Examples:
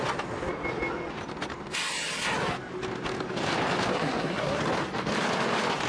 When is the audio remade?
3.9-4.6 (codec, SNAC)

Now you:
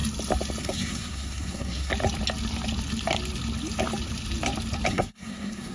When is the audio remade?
0.6-1.9 (codec, SNAC); 4.9-5.7

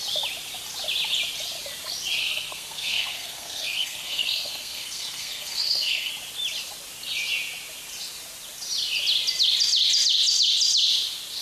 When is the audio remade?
2.2-6.1 (codec, SNAC)

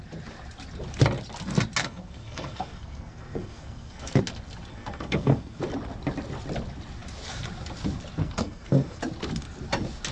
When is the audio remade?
1.8-4.2 (codec, SNAC); 4.7-5.6; 8.2-9.0